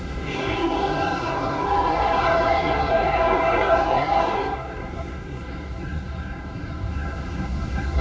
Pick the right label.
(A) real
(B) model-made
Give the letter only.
B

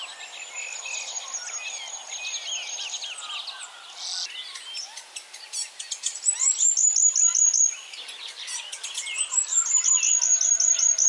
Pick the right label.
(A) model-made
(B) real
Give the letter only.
B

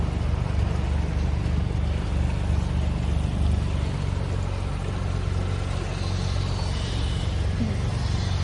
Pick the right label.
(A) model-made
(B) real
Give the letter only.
B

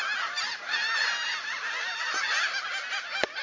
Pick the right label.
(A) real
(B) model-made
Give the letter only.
A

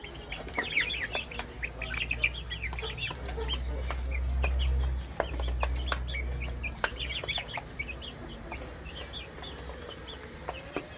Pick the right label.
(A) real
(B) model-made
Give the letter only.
A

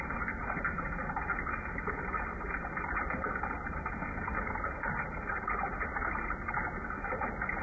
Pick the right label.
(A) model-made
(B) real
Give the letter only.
B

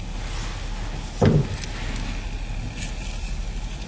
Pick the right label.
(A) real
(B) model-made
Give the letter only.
A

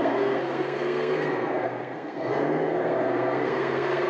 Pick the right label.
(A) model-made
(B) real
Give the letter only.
A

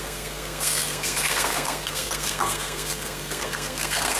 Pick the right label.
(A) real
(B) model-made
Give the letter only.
B